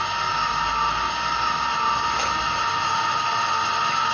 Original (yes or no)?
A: yes